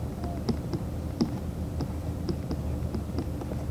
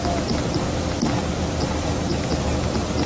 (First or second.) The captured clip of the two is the second